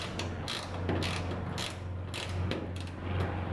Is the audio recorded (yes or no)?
yes